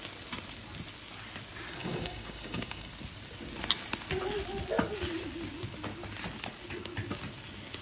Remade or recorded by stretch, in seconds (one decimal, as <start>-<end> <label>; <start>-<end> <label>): 0.0-1.8 recorded; 1.8-2.9 remade; 2.9-7.8 recorded